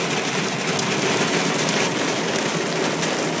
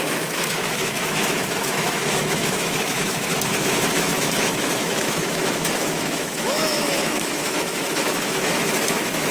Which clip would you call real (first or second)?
first